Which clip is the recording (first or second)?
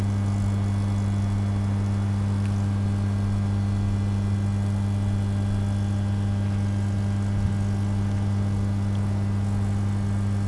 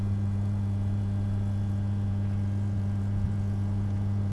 first